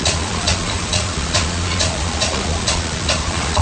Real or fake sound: fake